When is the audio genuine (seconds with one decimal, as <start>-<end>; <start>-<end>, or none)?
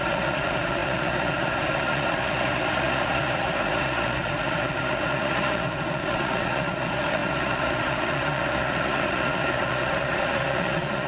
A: none